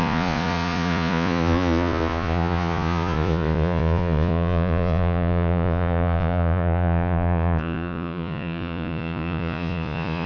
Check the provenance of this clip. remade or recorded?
remade